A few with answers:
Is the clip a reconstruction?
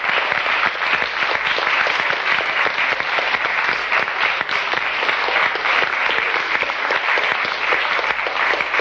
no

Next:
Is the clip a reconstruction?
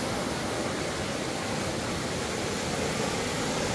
yes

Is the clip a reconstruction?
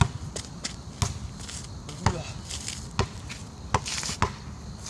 no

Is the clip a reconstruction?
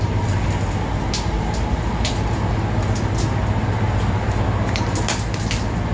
no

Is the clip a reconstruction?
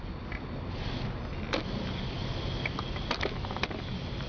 no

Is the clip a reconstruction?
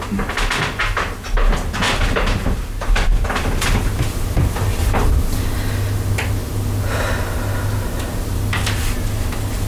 no